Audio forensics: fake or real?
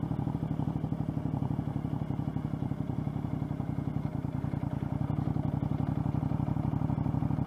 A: real